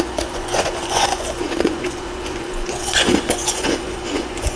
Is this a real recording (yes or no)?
no